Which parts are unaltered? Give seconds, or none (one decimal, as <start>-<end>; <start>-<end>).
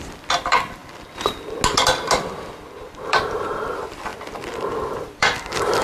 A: 0.8-2.8; 4.1-4.7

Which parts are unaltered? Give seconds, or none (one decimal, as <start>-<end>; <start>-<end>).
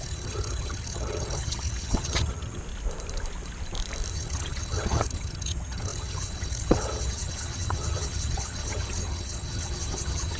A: 2.6-4.1